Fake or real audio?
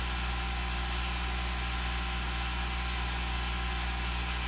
real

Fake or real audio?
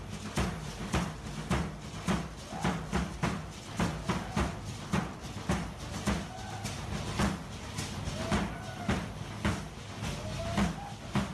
real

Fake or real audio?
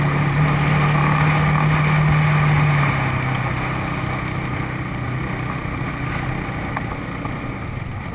real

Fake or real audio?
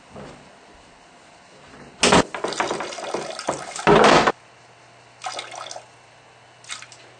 real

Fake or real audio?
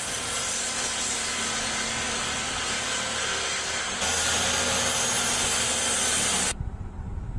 real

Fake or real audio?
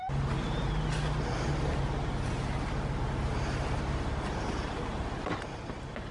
real